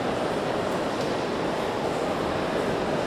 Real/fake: fake